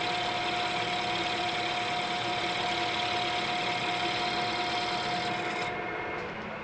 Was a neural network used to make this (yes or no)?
no